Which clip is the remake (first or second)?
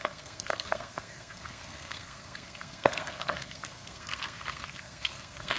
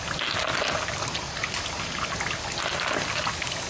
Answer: first